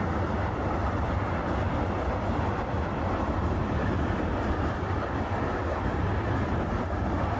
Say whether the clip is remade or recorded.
recorded